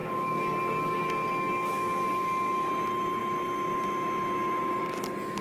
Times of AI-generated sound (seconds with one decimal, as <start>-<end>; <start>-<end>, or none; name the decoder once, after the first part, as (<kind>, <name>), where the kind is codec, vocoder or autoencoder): 0.0-2.7 (codec, DAC)